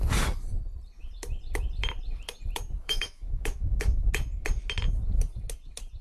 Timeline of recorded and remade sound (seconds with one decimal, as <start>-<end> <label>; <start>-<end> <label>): 0.0-2.8 recorded; 2.8-4.1 remade; 4.1-6.0 recorded